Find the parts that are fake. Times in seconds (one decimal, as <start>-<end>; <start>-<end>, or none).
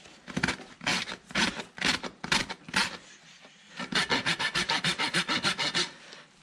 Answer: none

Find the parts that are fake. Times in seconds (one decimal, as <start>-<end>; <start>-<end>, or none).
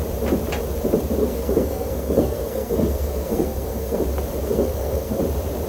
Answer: 1.2-4.0; 4.4-5.2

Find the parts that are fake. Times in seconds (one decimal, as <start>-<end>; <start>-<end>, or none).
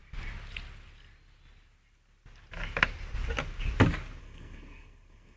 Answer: 4.2-5.4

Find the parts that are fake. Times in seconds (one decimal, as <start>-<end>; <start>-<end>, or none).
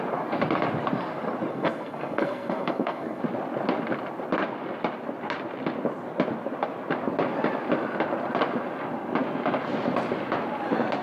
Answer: 1.5-3.2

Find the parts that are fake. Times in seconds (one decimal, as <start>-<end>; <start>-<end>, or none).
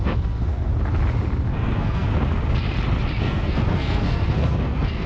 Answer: 0.0-0.7; 1.5-2.1; 3.2-5.1